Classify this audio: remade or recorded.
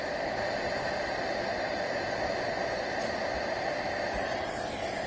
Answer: recorded